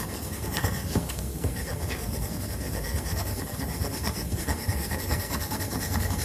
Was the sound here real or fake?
fake